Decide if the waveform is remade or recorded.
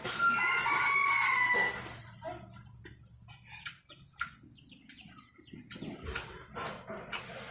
recorded